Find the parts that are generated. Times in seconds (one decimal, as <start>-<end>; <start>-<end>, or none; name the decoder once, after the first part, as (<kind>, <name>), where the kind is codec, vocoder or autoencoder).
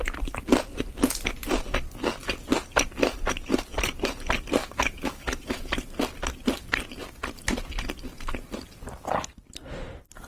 4.6-5.7 (autoencoder, DAC-VAE)